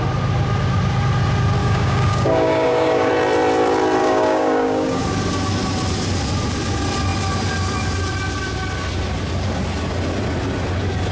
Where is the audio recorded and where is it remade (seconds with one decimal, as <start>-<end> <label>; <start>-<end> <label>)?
0.0-1.6 recorded; 1.6-3.1 remade; 3.1-4.0 recorded; 4.0-5.0 remade; 5.0-11.1 recorded